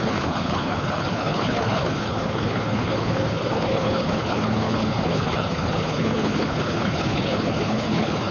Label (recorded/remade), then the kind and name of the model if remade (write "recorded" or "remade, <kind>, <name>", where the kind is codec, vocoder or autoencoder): remade, codec, HILCodec